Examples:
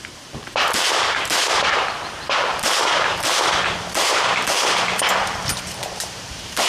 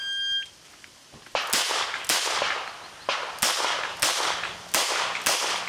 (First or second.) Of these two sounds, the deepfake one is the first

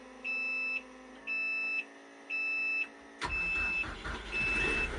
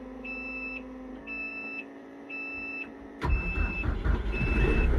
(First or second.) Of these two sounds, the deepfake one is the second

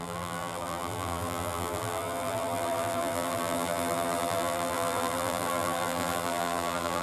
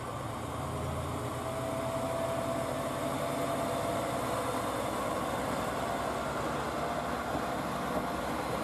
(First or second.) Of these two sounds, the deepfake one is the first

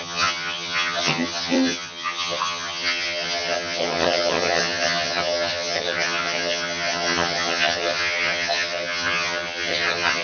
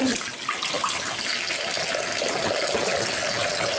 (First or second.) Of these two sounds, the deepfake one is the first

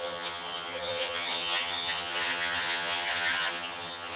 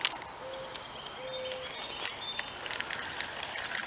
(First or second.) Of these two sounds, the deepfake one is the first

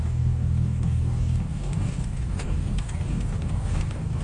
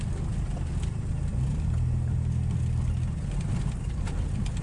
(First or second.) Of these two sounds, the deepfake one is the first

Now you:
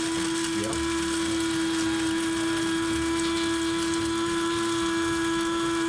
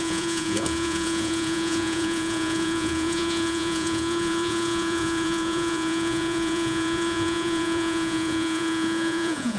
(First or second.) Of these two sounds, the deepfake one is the second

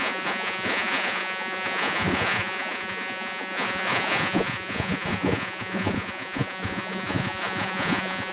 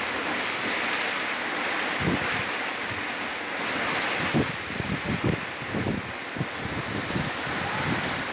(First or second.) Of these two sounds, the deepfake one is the first